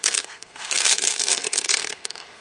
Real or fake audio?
fake